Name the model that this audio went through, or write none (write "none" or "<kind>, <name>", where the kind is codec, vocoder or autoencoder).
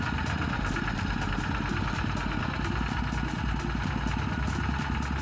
none